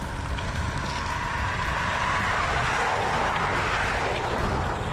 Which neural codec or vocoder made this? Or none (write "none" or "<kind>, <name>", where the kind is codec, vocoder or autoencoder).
none